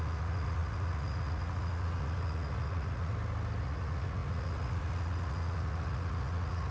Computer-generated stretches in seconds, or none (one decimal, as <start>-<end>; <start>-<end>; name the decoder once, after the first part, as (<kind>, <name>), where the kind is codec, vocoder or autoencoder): 0.0-3.1 (vocoder, Vocos); 3.6-6.7